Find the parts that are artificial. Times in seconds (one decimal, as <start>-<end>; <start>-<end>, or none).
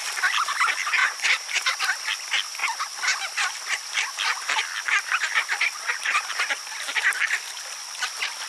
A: 1.0-1.8